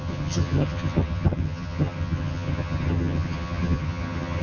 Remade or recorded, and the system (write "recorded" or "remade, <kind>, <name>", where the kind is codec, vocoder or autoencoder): remade, vocoder, HiFi-GAN